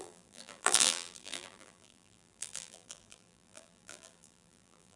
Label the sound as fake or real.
fake